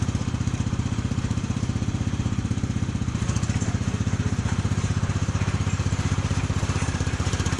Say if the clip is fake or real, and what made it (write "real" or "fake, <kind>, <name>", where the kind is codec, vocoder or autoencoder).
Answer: fake, vocoder, BigVGAN v2